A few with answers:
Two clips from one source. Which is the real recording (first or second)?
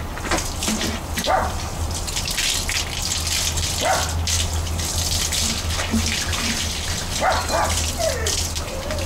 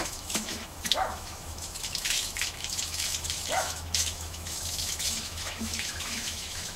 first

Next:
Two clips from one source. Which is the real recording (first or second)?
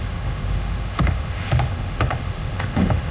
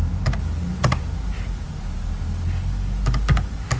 second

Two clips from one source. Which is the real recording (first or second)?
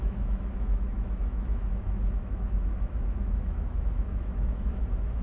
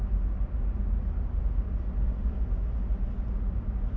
second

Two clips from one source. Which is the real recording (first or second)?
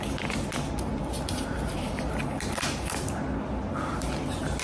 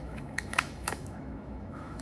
first